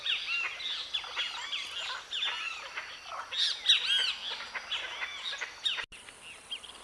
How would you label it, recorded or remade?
recorded